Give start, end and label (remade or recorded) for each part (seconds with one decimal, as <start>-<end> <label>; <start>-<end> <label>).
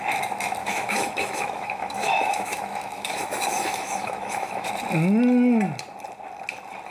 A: 0.0-0.6 recorded; 0.6-4.7 remade; 4.7-6.9 recorded